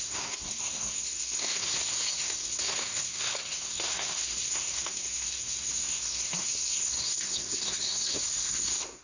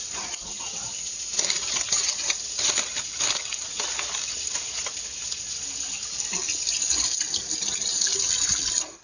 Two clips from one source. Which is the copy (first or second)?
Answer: first